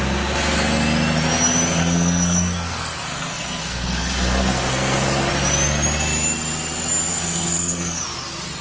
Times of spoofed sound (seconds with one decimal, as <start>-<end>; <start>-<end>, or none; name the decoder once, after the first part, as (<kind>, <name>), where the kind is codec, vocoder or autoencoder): 1.8-5.3 (codec, SNAC); 7.1-8.0